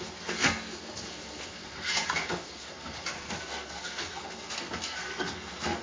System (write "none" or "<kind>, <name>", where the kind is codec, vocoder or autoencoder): codec, SNAC